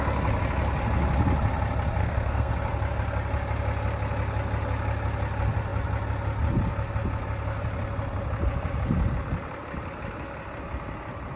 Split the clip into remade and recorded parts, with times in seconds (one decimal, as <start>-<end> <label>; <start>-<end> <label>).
0.0-2.0 recorded; 2.0-2.5 remade; 2.5-11.4 recorded